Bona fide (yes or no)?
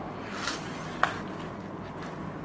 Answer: yes